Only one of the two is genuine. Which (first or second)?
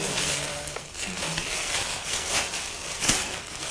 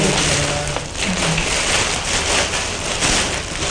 second